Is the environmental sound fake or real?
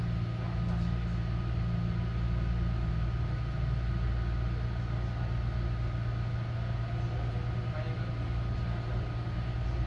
real